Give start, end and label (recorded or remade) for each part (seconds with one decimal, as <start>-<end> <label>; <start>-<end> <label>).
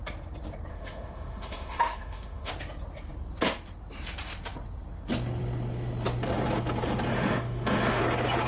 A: 0.0-0.7 recorded; 0.7-2.5 remade; 2.5-7.1 recorded; 7.1-8.0 remade; 8.0-8.5 recorded